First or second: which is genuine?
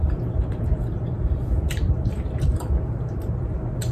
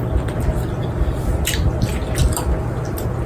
second